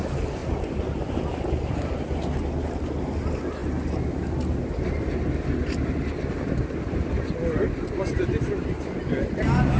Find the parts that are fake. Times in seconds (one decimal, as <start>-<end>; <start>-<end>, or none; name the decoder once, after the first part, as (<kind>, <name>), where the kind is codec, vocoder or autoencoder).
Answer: none